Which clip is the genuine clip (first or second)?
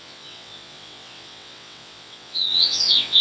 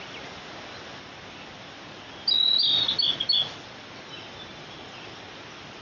second